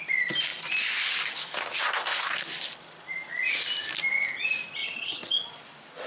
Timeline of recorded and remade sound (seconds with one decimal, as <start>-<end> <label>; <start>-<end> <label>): 0.0-4.8 recorded; 4.8-5.4 remade; 5.4-6.1 recorded